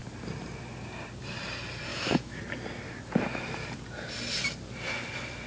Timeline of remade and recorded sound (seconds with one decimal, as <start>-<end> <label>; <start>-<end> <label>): 0.0-1.9 recorded; 1.9-2.4 remade; 2.4-5.5 recorded